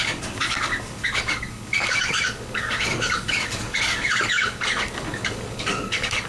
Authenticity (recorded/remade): remade